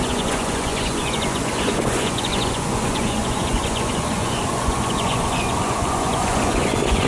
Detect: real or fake fake